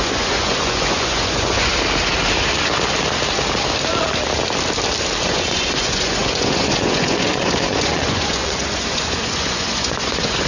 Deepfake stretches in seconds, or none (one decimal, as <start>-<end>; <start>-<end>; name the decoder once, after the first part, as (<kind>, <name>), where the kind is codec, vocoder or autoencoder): 0.0-1.7 (vocoder, Vocos); 5.2-10.5